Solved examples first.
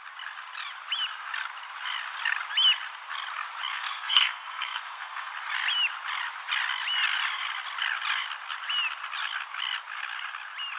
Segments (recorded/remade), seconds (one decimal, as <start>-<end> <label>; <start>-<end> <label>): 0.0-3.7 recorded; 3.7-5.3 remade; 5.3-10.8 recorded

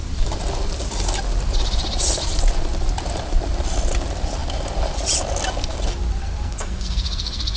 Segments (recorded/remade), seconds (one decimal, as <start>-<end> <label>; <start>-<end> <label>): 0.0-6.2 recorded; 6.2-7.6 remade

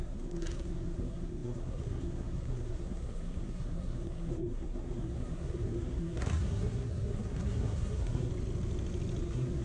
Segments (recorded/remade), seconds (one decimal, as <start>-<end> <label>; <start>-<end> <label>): 0.0-8.3 remade; 8.3-9.2 recorded; 9.2-9.6 remade

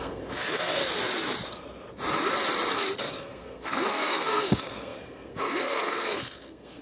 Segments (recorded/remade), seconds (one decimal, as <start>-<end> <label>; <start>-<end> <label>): 0.0-0.8 remade; 0.8-3.0 recorded; 3.0-6.8 remade

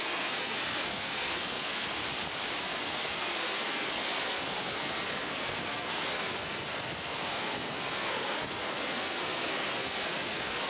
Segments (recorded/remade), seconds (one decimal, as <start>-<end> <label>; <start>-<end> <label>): 0.0-2.0 remade; 2.0-2.6 recorded; 2.6-10.7 remade